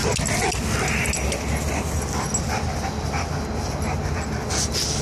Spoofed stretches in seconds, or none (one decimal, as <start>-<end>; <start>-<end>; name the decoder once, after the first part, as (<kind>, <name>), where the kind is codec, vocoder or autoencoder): none